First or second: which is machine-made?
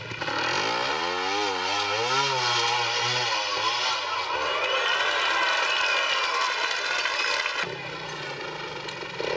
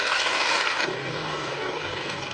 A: second